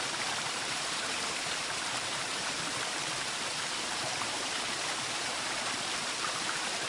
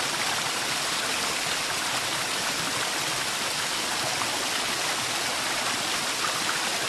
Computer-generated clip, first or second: first